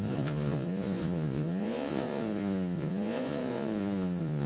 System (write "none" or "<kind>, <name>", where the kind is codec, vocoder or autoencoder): vocoder, Vocos